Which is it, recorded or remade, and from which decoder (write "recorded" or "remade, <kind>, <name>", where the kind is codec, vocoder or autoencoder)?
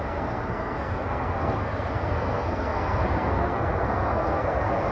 remade, codec, SNAC